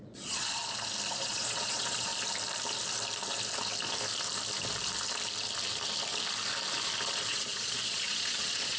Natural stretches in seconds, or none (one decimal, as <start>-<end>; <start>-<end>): 0.6-1.1; 2.1-7.3